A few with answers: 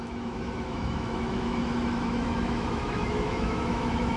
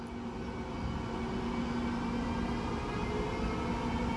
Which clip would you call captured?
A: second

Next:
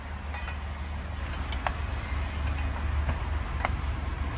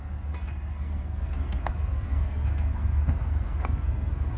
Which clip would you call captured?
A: first